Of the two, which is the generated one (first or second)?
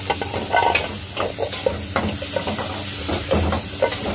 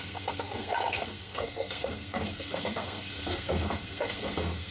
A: second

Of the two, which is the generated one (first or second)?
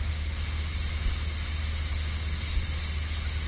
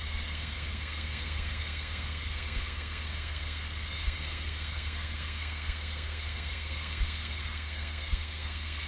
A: second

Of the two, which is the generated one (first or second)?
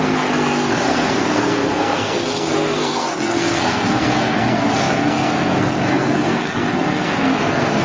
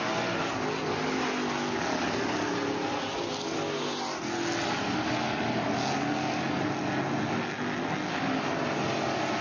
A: first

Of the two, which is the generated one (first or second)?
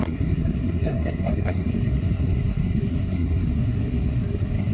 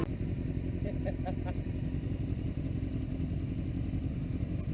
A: first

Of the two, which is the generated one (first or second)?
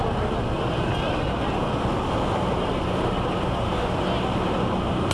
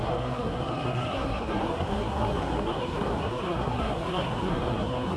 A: second